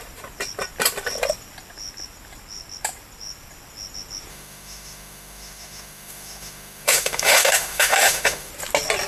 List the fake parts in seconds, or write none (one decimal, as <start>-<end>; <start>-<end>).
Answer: 4.3-8.5